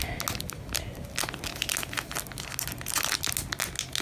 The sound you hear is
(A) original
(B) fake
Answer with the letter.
A